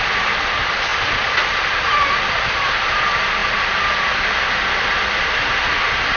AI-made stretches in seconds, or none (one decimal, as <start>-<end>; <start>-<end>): none